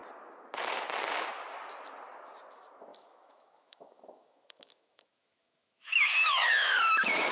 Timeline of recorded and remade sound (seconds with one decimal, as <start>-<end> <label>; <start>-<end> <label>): 0.0-2.9 recorded; 2.9-7.3 remade